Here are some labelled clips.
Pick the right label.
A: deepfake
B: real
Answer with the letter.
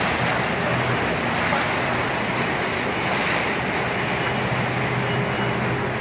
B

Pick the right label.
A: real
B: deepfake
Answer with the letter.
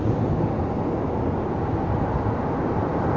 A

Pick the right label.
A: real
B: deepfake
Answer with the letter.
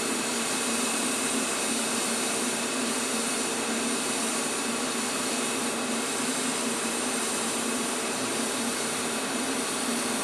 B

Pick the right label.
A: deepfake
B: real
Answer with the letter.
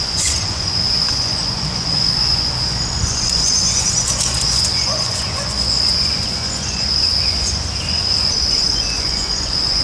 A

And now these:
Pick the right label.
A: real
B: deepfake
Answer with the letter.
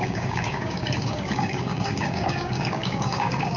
B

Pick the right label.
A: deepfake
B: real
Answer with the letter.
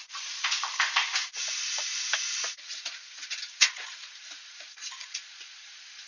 A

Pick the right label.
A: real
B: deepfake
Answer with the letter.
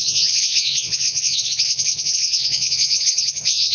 B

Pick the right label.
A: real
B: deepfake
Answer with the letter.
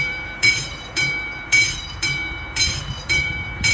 B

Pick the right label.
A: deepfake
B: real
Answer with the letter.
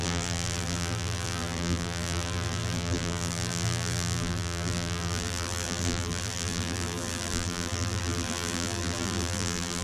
A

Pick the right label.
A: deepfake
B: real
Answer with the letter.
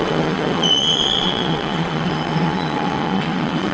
A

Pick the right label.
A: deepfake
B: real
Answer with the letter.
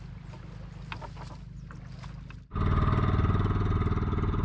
B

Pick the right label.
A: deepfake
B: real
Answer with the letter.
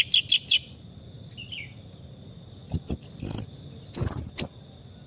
B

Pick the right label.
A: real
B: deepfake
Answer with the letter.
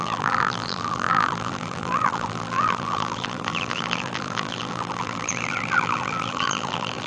B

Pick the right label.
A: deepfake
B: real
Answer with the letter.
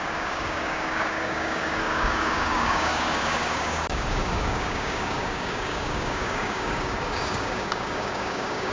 A